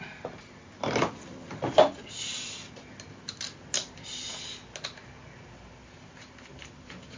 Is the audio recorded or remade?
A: recorded